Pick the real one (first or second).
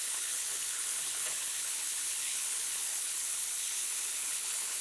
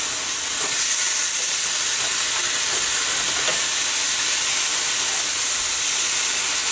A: second